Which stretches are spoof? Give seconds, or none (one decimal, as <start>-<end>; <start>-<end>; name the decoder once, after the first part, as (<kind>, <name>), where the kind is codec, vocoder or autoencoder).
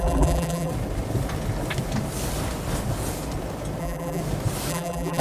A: 0.0-0.7 (vocoder, BigVGAN v2); 3.8-4.2; 4.7-5.2